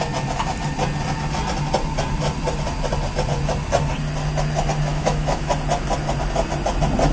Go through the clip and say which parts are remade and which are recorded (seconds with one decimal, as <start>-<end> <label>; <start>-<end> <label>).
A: 0.0-4.9 recorded; 4.9-5.5 remade; 5.5-7.1 recorded